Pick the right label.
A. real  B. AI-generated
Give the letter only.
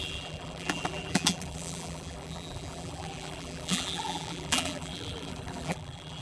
B